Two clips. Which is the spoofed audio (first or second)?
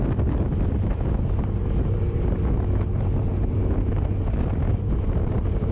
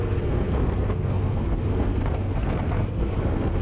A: second